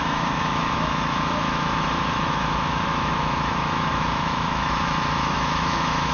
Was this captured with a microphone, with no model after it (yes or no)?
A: no